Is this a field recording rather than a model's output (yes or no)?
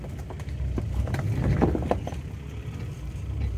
yes